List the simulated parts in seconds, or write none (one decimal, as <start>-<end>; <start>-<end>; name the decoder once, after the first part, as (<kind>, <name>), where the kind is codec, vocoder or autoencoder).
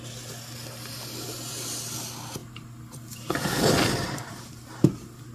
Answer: none